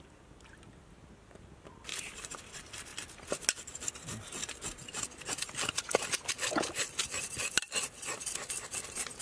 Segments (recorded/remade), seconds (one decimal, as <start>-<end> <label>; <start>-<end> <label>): 0.0-1.9 recorded; 1.9-2.4 remade; 2.4-9.2 recorded